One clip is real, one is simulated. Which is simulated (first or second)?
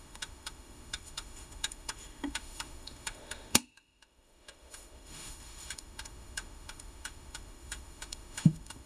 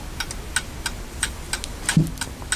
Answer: first